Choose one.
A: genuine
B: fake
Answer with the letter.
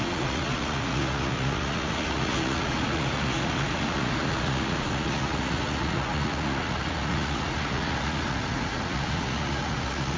B